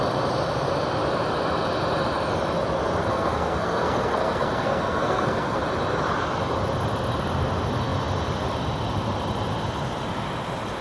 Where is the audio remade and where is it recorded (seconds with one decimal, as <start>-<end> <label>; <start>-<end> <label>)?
0.0-3.0 recorded; 3.0-5.6 remade; 5.6-10.8 recorded